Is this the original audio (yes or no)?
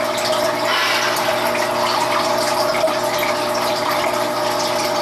yes